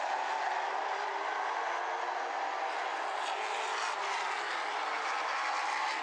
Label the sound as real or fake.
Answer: real